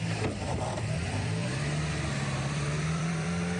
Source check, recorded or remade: remade